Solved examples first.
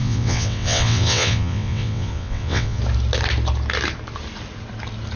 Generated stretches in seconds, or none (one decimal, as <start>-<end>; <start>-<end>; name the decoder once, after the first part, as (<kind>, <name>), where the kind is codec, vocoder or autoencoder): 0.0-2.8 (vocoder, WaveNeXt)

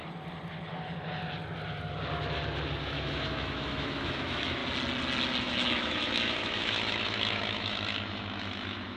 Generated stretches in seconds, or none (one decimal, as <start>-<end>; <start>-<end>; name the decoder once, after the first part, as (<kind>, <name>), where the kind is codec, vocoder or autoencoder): 2.8-4.6 (autoencoder, DAC-VAE); 5.4-9.0

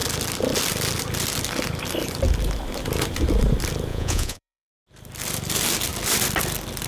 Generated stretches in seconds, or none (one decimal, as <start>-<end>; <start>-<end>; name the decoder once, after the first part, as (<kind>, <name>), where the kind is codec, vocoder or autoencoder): 3.9-4.7 (vocoder, Vocos)

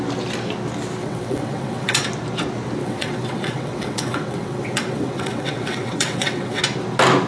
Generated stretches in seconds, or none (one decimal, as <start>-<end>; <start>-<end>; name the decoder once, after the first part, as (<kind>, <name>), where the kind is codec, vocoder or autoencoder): 1.0-2.0 (vocoder, WaveNeXt); 2.8-6.6

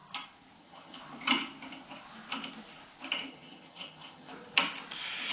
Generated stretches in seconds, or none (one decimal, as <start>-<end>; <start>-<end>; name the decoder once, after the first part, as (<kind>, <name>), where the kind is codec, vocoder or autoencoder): 0.6-1.0 (vocoder, HiFi-GAN); 3.3-4.3

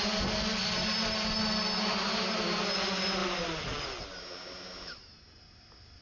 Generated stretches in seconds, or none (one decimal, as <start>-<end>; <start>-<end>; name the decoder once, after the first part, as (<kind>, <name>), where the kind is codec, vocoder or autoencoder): none

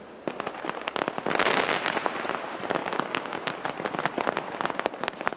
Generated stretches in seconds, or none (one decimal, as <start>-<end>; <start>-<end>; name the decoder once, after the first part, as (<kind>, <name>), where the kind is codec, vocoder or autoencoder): 2.8-3.4 (codec, DAC)